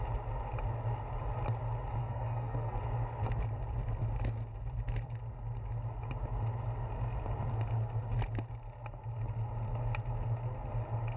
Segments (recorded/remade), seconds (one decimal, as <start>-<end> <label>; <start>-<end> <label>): 0.0-2.0 recorded; 2.0-2.8 remade; 2.8-11.2 recorded

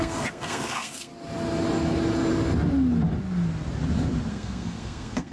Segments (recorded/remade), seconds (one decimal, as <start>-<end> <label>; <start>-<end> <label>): 0.0-1.1 remade; 1.1-4.3 recorded; 4.3-5.3 remade

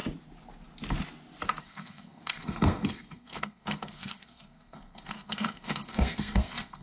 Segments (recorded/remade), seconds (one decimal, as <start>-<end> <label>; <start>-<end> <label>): 0.0-1.6 recorded; 1.6-6.8 remade

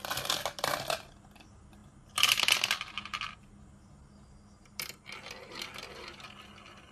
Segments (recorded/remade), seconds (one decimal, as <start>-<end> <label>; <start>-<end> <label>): 0.0-6.9 recorded

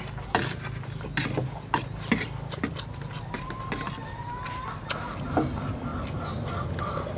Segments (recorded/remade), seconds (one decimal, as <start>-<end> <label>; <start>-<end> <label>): 0.0-7.2 recorded

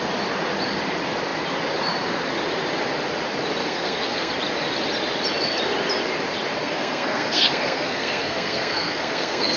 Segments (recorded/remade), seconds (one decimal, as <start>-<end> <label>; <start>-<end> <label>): 0.0-3.6 recorded; 3.6-4.3 remade; 4.3-6.6 recorded; 6.6-9.6 remade

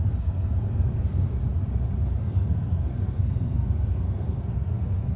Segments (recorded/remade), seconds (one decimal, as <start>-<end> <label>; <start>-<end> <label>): 0.0-1.4 remade; 1.4-2.2 recorded; 2.2-5.2 remade